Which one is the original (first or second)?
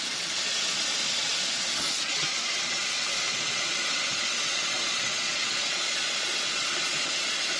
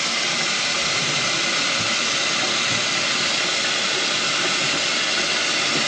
second